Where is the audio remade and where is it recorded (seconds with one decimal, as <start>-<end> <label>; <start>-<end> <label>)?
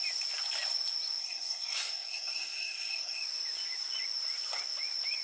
0.0-1.2 recorded; 1.2-3.2 remade; 3.2-5.2 recorded